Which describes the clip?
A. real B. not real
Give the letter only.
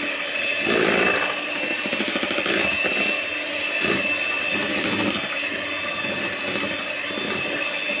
A